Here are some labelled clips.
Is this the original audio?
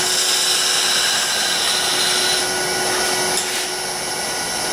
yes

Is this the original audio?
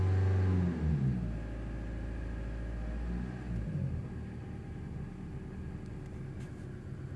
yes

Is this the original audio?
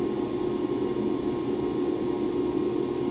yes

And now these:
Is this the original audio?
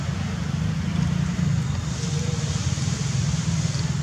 yes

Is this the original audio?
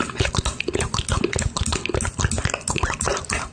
yes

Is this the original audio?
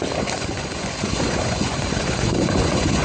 no